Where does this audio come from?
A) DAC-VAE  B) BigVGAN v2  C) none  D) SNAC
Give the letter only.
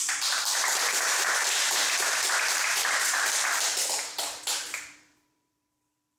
B